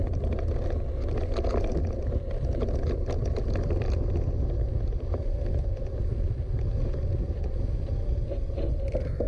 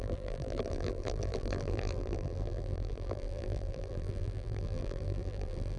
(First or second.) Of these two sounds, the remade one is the second